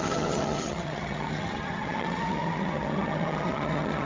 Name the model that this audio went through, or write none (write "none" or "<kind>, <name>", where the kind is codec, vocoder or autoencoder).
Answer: vocoder, HiFi-GAN